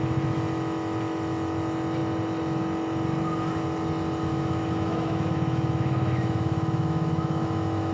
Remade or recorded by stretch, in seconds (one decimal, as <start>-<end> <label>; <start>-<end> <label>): 0.0-4.3 recorded; 4.3-7.9 remade